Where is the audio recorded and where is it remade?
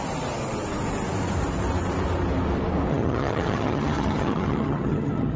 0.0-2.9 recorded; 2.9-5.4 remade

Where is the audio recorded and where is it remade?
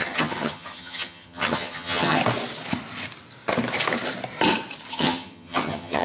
0.0-2.2 remade; 2.2-4.9 recorded; 4.9-6.0 remade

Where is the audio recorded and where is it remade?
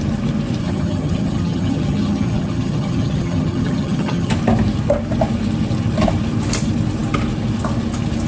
0.0-0.6 recorded; 0.6-4.3 remade; 4.3-8.3 recorded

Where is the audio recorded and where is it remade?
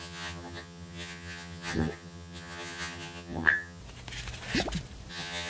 0.0-3.8 remade; 3.8-5.1 recorded; 5.1-5.5 remade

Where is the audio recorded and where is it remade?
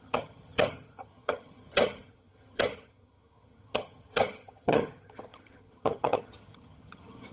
0.0-7.3 remade